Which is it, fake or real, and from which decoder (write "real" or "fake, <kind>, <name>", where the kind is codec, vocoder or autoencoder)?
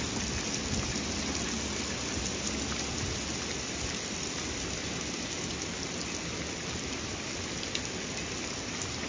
real